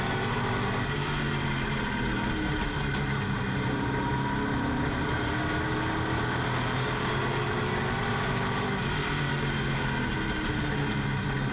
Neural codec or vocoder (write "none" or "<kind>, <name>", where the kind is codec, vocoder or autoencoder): none